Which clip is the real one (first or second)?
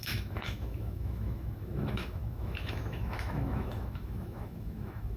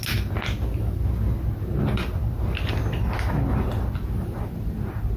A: second